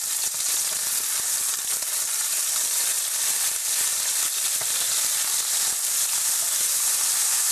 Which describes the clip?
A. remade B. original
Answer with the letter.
A